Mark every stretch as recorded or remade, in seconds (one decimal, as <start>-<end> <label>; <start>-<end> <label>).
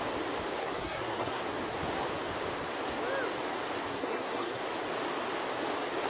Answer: 0.0-0.6 recorded; 0.6-1.4 remade; 1.4-3.9 recorded; 3.9-4.6 remade; 4.6-6.1 recorded